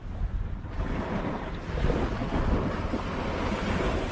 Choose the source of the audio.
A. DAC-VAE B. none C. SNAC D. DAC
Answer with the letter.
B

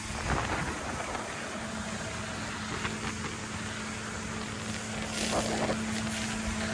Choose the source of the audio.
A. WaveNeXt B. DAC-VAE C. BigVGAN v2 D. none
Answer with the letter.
D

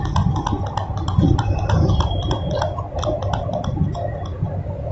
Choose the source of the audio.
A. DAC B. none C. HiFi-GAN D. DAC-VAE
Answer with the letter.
B